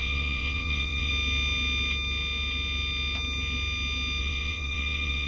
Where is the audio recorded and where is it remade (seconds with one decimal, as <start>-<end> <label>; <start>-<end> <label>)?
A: 0.0-1.1 remade; 1.1-4.2 recorded; 4.2-5.3 remade